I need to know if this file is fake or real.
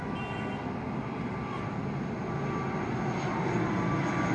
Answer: real